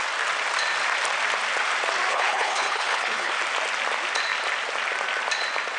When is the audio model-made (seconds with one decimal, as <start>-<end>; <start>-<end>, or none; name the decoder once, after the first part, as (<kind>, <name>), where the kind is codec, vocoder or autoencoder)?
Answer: 2.1-3.3 (codec, HILCodec)